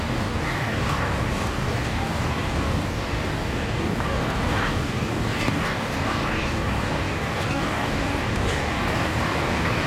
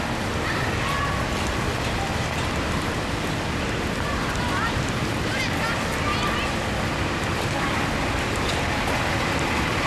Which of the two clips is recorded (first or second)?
second